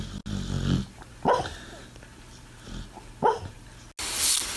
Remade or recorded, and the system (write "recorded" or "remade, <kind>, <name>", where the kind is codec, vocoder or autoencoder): recorded